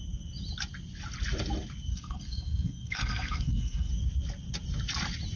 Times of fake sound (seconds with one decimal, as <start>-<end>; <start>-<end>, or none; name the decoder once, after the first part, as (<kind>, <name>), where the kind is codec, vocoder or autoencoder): 1.9-3.9 (codec, SNAC)